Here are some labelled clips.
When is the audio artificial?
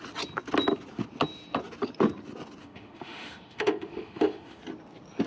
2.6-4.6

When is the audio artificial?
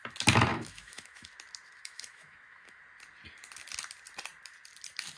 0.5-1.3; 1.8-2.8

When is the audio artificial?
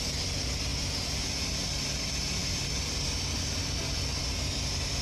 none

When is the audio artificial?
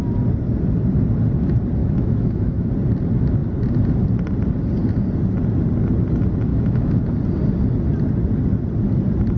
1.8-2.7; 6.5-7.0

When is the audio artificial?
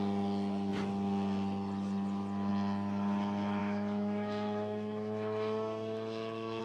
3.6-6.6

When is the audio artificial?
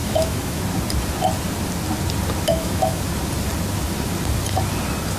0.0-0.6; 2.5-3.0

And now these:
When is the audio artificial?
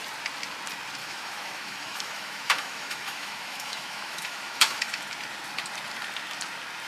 1.0-5.0